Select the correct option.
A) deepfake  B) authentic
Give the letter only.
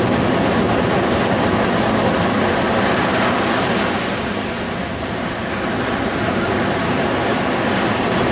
B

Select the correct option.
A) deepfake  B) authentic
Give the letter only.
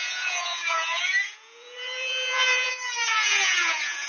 A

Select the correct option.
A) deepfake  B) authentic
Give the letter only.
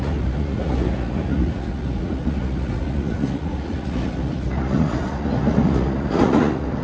A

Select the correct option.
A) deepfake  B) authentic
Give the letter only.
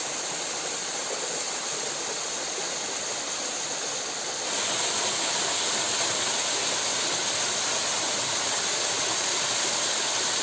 B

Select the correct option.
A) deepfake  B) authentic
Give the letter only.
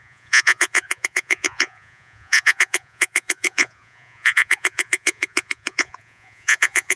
A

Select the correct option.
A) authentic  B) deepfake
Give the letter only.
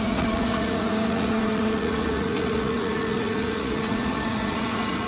B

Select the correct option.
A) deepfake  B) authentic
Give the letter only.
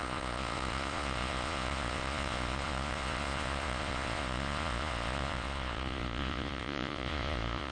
A